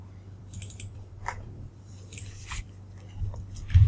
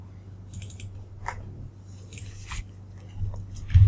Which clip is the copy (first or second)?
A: first